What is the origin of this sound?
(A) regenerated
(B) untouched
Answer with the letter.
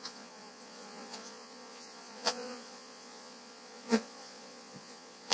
A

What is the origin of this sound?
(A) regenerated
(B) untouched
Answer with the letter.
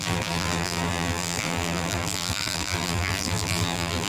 A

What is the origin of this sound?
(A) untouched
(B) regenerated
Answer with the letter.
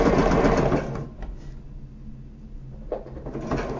A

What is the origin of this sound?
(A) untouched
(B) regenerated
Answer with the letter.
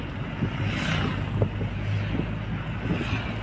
A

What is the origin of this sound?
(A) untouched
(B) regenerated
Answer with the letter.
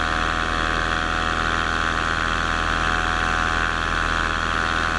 A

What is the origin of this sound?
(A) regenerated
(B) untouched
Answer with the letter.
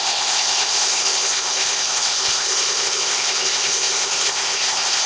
A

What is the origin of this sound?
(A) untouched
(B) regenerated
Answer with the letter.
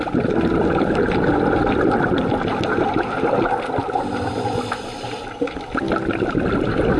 A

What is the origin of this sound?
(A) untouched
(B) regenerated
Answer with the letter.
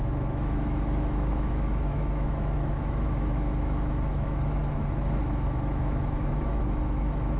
B